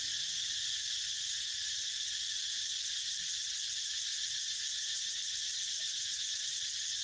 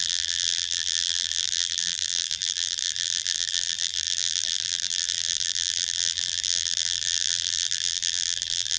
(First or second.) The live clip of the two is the first